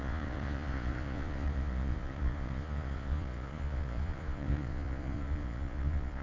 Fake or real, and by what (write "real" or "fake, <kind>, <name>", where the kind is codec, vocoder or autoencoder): fake, vocoder, Vocos